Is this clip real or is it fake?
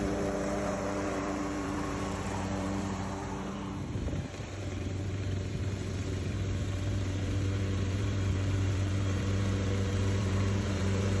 fake